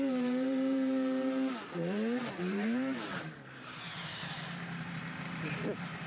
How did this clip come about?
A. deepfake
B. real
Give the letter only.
A